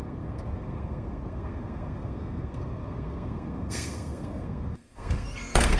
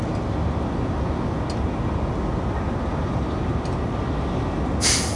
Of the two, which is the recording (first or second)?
second